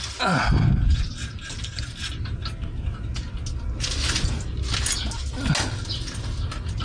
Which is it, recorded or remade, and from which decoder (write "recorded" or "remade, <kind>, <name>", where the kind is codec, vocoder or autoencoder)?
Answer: recorded